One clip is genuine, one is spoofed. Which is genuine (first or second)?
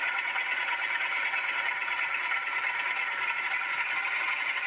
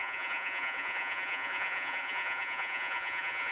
first